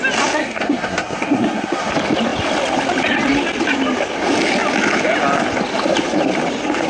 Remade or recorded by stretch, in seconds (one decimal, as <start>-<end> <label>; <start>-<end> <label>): 0.0-0.4 recorded; 0.4-1.9 remade; 1.9-6.9 recorded